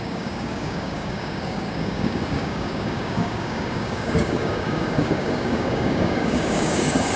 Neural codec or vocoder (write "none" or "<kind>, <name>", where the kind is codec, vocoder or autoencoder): codec, DAC